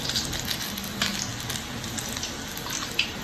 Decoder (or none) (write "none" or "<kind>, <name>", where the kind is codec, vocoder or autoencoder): none